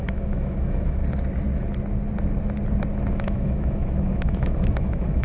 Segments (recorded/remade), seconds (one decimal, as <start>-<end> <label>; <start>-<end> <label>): 0.0-1.0 remade; 1.0-3.1 recorded; 3.1-5.2 remade